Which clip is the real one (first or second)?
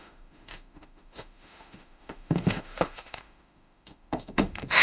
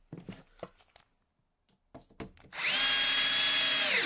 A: second